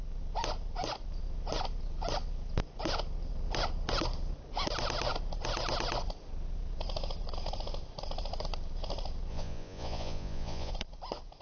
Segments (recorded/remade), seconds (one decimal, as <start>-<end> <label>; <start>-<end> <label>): 0.0-9.3 recorded; 9.3-10.7 remade; 10.7-11.4 recorded